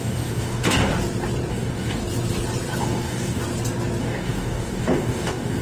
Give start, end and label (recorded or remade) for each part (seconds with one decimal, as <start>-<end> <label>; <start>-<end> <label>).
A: 0.0-0.9 remade; 0.9-1.5 recorded; 1.5-2.0 remade; 2.0-2.8 recorded; 2.8-3.4 remade; 3.4-4.0 recorded; 4.0-5.6 remade